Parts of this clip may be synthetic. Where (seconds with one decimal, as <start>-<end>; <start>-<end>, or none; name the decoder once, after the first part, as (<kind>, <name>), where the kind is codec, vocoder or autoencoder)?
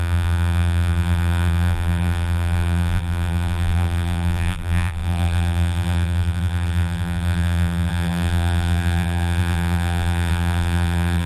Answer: 0.0-11.3 (vocoder, BigVGAN v2)